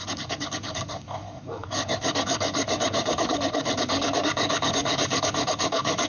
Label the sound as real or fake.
fake